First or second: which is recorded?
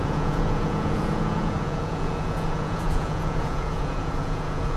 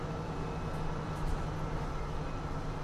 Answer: second